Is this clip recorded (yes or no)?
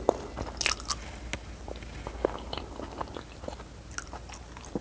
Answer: yes